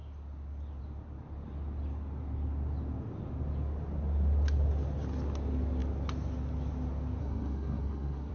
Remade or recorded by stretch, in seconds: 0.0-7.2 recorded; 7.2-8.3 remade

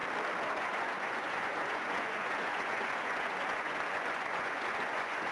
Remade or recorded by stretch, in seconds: 0.0-0.5 recorded; 0.5-5.3 remade

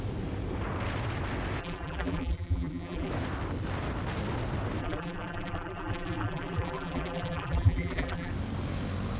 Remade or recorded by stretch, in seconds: 0.0-1.6 recorded; 1.6-3.1 remade; 3.1-4.8 recorded; 4.8-8.3 remade; 8.3-9.2 recorded

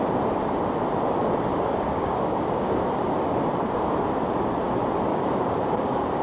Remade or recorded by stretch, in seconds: 0.0-1.5 recorded; 1.5-2.8 remade; 2.8-5.1 recorded; 5.1-6.2 remade

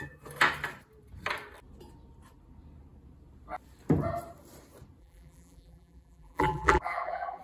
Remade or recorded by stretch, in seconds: 0.0-5.0 recorded; 5.0-7.4 remade